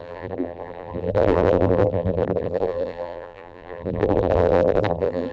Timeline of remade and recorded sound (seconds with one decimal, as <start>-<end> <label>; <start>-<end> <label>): 0.0-5.3 remade